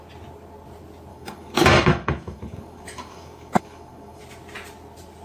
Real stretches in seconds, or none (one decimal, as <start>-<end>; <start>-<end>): 0.0-1.1; 4.2-5.2